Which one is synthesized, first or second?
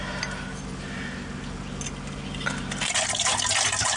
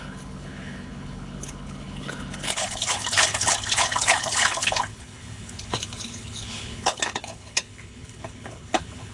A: second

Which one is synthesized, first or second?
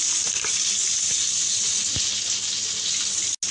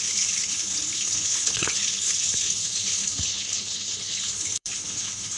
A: second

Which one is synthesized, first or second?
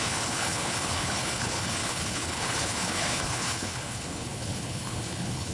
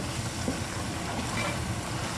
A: first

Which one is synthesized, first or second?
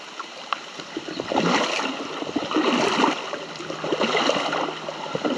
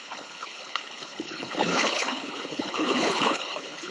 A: second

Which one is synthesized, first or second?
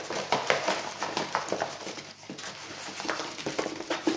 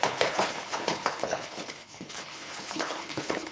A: second